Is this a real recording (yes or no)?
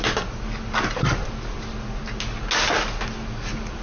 yes